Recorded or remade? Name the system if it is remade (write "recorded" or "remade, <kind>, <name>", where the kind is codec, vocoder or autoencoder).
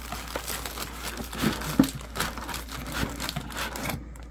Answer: recorded